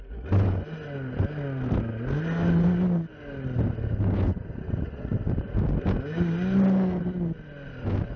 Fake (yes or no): no